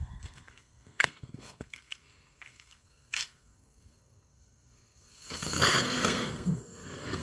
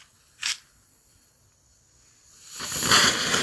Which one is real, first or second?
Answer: second